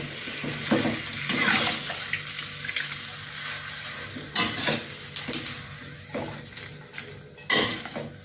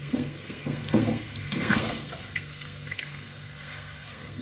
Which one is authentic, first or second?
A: first